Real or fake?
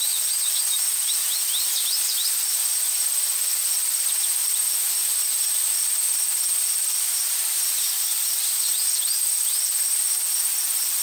real